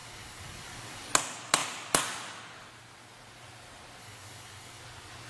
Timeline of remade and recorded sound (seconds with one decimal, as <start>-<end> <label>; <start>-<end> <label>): 0.0-1.1 remade; 1.1-4.0 recorded; 4.0-4.8 remade; 4.8-5.3 recorded